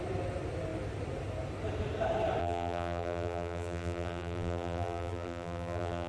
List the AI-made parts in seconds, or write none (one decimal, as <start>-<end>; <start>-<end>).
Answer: 2.4-6.1